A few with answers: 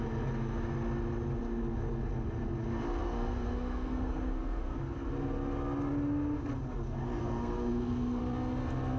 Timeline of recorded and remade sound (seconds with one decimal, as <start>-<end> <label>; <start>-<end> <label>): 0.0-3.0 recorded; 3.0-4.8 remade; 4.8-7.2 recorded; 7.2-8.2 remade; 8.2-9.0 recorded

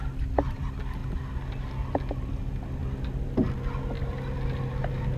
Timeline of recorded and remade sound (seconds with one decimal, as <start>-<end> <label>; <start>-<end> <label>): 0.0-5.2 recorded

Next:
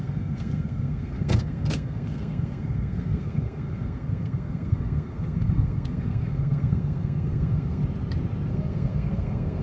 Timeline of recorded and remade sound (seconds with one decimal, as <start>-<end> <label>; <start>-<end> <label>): 0.0-7.8 remade; 7.8-8.5 recorded; 8.5-9.6 remade